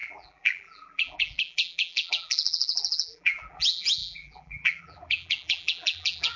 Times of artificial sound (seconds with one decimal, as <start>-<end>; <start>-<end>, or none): 0.0-6.4

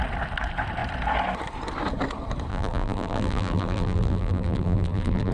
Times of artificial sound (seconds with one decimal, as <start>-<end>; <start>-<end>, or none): 2.5-5.3

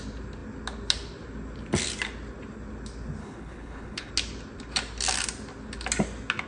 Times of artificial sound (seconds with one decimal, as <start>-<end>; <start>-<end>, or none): 3.2-4.1

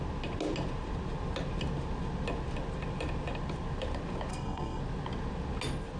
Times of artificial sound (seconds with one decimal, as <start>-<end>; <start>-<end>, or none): 4.3-4.8

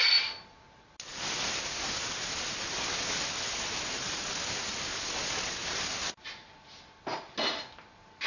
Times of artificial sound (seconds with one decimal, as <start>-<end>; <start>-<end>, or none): none

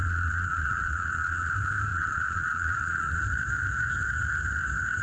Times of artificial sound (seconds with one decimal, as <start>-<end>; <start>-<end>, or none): 0.0-1.5; 1.9-3.2

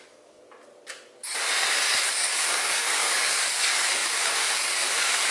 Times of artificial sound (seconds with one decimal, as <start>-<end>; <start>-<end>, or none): 0.0-0.4; 2.1-5.3

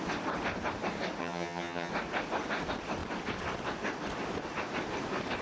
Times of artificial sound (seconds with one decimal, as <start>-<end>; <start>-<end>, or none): 1.2-1.9